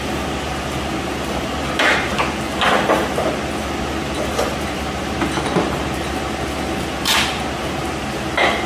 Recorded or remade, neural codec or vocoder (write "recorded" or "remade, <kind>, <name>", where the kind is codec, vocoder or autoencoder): recorded